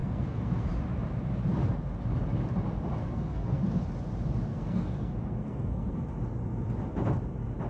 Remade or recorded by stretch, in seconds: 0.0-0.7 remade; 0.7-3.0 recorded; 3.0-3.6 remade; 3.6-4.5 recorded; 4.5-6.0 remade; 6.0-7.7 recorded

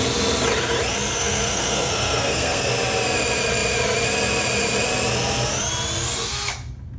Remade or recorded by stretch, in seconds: 0.0-1.2 recorded; 1.2-2.7 remade; 2.7-7.0 recorded

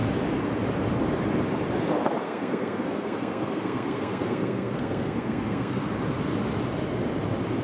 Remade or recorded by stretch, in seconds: 0.0-2.2 recorded; 2.2-5.9 remade; 5.9-7.6 recorded

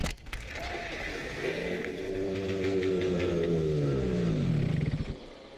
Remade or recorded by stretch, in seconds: 0.0-0.5 remade; 0.5-1.1 recorded; 1.1-4.5 remade; 4.5-5.6 recorded